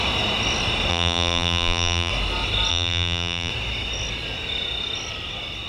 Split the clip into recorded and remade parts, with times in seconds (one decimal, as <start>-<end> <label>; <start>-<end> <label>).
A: 0.0-0.9 recorded; 0.9-2.1 remade; 2.1-2.7 recorded; 2.7-3.5 remade; 3.5-5.7 recorded